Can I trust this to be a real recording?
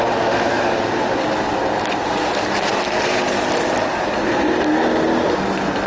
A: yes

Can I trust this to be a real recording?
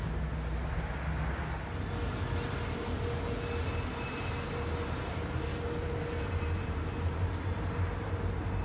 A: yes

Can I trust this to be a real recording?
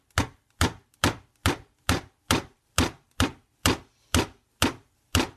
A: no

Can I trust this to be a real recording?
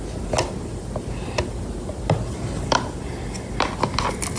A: yes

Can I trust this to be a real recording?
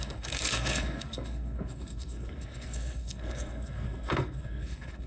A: no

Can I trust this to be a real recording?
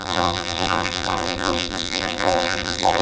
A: no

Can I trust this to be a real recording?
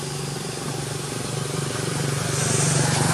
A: yes